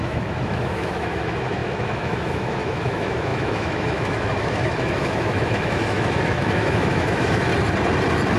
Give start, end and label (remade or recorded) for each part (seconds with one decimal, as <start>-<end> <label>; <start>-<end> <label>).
0.0-7.5 remade; 7.5-8.4 recorded